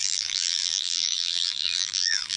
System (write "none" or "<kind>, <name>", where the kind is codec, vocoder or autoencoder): vocoder, BigVGAN v2